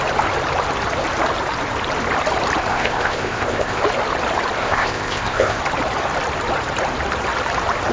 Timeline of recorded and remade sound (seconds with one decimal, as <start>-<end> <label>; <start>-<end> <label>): 0.0-2.7 recorded; 2.7-3.8 remade; 3.8-4.6 recorded; 4.6-5.6 remade; 5.6-7.9 recorded